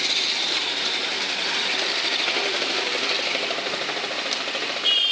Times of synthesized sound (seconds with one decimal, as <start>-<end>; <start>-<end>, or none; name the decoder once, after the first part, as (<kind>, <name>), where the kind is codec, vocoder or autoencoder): 1.0-4.1 (vocoder, BigVGAN v2)